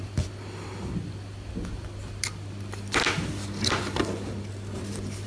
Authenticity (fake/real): real